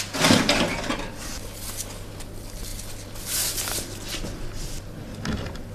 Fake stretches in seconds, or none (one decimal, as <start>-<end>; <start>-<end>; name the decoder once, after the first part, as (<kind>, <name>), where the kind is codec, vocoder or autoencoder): 2.7-4.8 (vocoder, BigVGAN v2)